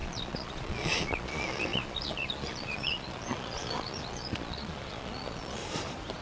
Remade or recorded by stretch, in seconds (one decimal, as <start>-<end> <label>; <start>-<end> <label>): 0.0-5.6 remade; 5.6-6.2 recorded